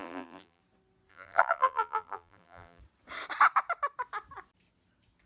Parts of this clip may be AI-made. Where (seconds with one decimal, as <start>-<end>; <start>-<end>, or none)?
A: 0.0-0.6; 1.1-2.8